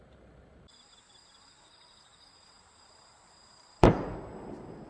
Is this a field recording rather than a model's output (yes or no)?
no